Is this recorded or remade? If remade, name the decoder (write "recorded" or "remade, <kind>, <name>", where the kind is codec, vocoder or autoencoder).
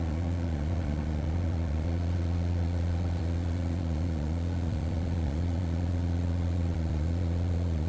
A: remade, vocoder, Vocos